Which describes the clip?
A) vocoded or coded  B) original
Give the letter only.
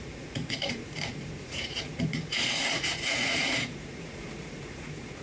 A